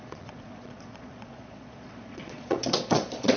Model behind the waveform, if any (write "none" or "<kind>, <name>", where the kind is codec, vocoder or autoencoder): vocoder, Vocos